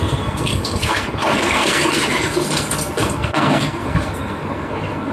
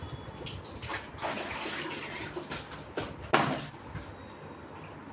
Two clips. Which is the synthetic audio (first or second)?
first